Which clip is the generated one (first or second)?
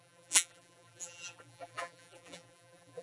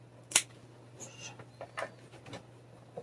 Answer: first